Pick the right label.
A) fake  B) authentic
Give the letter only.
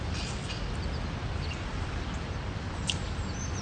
B